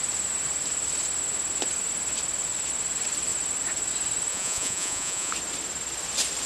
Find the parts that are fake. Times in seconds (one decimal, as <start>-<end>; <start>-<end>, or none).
4.3-5.3